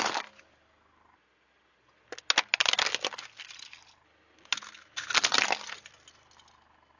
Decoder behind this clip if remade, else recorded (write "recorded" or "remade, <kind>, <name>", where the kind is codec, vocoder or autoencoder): recorded